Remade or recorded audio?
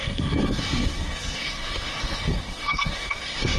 remade